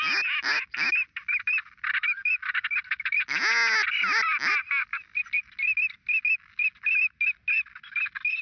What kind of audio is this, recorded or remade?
recorded